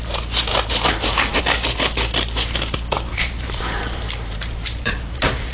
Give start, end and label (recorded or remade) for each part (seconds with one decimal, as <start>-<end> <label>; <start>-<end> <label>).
0.0-0.5 recorded; 0.5-1.4 remade; 1.4-3.1 recorded; 3.1-5.5 remade